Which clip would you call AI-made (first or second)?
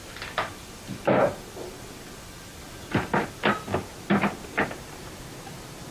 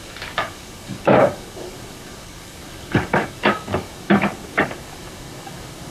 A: second